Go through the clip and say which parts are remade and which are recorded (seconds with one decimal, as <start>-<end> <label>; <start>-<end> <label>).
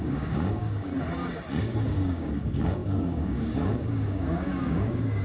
0.0-0.9 remade; 0.9-1.6 recorded; 1.6-5.2 remade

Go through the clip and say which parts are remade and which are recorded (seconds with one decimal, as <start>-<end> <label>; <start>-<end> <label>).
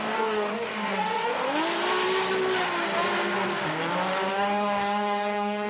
0.0-1.4 remade; 1.4-4.3 recorded; 4.3-5.7 remade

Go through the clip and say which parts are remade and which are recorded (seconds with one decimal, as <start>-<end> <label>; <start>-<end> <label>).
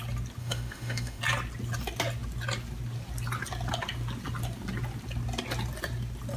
0.0-0.4 recorded; 0.4-1.2 remade; 1.2-6.4 recorded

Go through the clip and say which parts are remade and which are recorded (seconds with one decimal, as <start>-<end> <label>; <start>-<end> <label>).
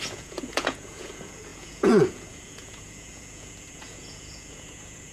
0.0-5.1 remade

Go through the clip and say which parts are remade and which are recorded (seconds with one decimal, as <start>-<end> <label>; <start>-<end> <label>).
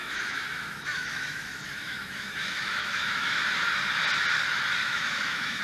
0.0-3.4 remade; 3.4-4.8 recorded; 4.8-5.6 remade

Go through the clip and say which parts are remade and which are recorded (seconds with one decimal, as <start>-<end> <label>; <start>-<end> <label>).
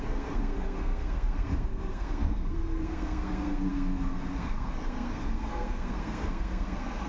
0.0-7.1 remade